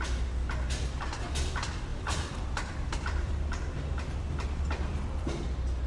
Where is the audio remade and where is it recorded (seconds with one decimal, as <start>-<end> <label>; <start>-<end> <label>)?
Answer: 0.0-1.9 recorded; 1.9-5.4 remade; 5.4-5.9 recorded